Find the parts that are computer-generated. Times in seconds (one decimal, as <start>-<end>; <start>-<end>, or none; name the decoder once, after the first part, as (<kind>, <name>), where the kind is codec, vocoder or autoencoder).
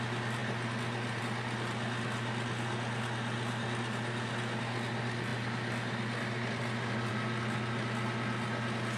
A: none